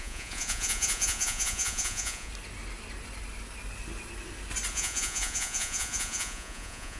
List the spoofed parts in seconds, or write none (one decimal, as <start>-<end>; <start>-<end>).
0.0-2.3; 4.7-7.0